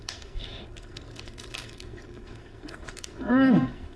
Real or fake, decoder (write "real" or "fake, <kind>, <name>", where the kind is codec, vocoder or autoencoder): fake, codec, SNAC